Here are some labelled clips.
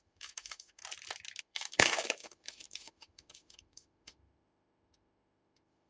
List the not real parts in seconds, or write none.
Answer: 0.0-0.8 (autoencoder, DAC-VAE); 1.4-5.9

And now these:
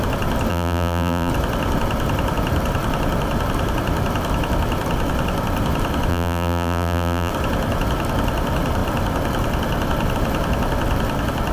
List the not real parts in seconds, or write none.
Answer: 0.5-1.3 (vocoder, BigVGAN v2); 6.1-7.3